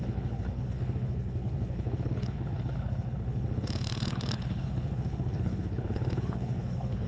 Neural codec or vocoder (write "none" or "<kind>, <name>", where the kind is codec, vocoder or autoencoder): codec, HILCodec